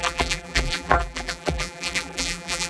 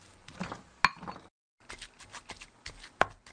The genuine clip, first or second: second